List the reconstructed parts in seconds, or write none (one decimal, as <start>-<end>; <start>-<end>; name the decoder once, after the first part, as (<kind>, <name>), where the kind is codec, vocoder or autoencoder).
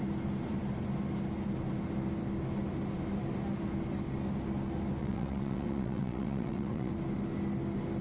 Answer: 5.0-6.9 (vocoder, WaveNeXt)